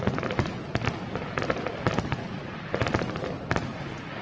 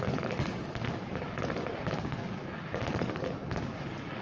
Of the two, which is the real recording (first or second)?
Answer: first